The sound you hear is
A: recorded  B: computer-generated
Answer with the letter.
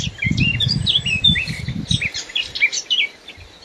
B